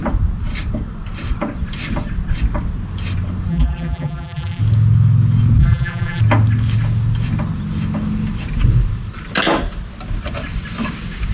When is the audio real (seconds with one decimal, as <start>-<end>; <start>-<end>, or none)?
0.0-3.5; 4.6-5.6; 6.2-11.3